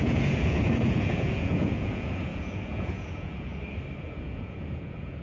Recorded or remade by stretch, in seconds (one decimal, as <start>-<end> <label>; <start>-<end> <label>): 0.0-3.5 remade; 3.5-4.0 recorded; 4.0-5.2 remade